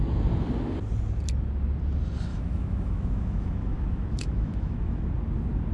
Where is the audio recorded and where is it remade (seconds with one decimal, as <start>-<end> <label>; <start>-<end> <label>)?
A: 0.0-2.3 recorded; 2.3-5.1 remade; 5.1-5.7 recorded